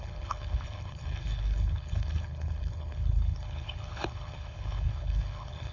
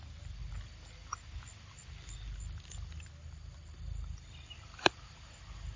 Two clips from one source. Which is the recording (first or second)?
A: second